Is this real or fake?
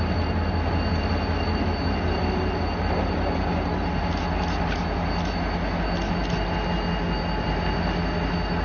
real